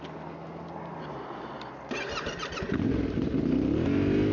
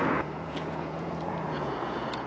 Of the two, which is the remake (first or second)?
second